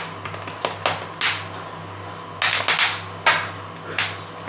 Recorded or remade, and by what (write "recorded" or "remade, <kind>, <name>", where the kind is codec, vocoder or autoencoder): recorded